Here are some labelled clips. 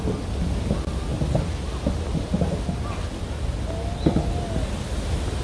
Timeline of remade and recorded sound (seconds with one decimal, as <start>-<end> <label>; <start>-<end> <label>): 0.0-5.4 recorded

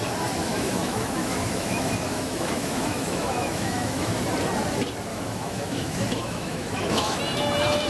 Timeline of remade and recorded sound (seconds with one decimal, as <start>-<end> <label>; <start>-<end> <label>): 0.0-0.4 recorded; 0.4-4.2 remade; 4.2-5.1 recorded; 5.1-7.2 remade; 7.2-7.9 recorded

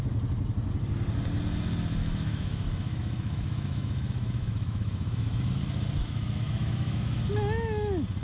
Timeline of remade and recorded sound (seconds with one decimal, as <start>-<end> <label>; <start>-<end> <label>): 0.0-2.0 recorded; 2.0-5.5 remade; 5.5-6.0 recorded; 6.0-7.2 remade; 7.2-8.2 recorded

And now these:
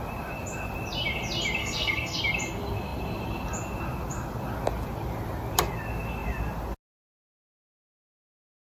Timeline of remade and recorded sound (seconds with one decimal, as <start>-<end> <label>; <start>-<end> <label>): 0.0-1.6 recorded; 1.6-2.2 remade; 2.2-8.6 recorded

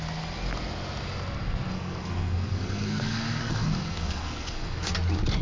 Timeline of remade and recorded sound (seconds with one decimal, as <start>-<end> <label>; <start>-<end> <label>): 0.0-1.7 recorded; 1.7-4.9 remade; 4.9-5.4 recorded

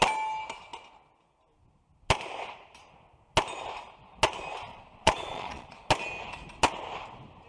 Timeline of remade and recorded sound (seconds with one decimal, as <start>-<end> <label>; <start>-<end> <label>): 0.0-4.7 recorded; 4.7-5.9 remade; 5.9-7.5 recorded

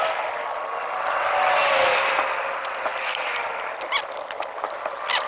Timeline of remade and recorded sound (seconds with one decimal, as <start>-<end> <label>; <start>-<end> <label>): 0.0-2.9 recorded; 2.9-5.3 remade